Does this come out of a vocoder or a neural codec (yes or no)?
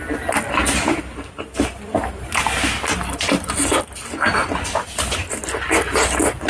no